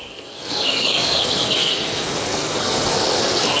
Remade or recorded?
remade